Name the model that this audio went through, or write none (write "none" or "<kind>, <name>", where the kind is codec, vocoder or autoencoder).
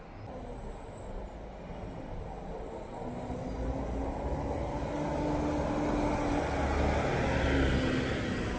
none